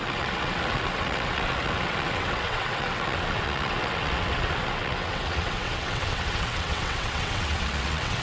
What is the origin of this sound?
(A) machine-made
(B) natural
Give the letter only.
A